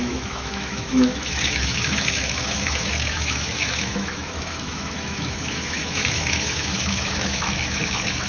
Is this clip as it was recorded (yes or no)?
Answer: no